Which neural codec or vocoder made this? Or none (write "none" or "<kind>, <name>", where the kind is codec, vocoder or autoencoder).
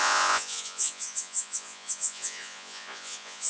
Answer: vocoder, Vocos